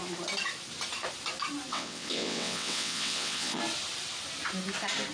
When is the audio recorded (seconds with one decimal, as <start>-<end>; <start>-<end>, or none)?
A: 0.0-1.7; 3.6-5.1